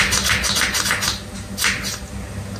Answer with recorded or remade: recorded